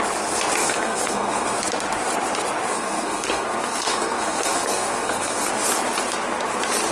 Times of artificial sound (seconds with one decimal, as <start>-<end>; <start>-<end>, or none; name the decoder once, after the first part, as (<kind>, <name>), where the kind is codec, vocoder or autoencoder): 0.6-1.6 (codec, SNAC); 2.7-5.5